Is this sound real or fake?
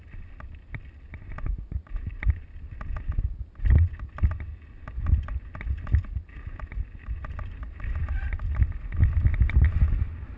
real